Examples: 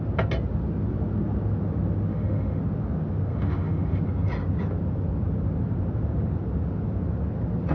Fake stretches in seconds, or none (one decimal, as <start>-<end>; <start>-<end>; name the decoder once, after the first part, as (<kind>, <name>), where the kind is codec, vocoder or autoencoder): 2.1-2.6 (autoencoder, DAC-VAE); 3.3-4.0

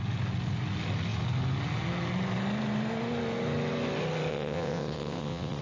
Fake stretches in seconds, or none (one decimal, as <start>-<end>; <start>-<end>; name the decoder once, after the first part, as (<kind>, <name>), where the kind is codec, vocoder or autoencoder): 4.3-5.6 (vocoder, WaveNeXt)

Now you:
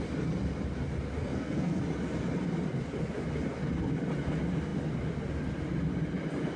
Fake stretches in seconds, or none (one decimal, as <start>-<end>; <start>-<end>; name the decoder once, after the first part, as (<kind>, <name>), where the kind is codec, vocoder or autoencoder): 1.2-1.8 (codec, SNAC)